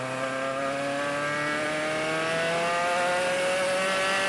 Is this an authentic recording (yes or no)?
yes